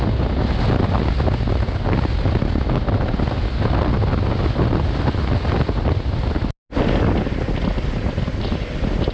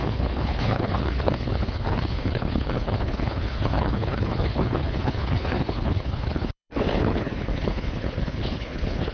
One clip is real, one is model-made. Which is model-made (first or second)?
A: second